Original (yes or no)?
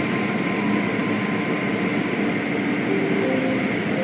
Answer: yes